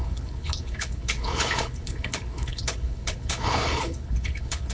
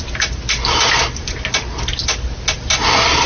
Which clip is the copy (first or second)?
first